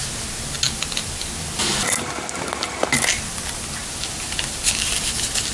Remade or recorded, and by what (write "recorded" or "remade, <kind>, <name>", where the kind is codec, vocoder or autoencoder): recorded